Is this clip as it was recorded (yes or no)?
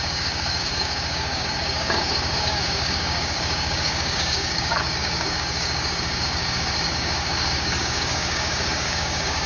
no